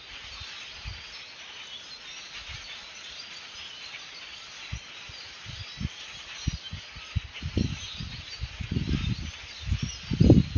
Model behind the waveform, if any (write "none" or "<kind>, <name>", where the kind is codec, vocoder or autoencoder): none